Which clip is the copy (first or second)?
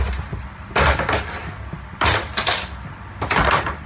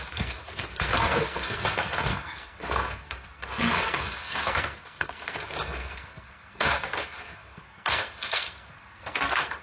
second